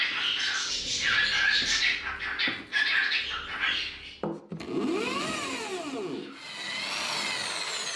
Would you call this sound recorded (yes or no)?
yes